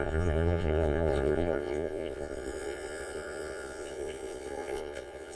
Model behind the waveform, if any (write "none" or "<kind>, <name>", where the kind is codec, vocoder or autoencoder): vocoder, Vocos